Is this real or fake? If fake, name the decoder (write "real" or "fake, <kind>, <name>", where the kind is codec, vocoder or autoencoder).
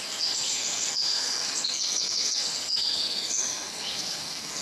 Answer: fake, codec, SNAC